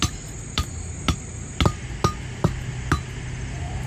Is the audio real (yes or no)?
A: yes